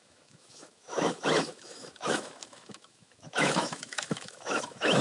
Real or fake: fake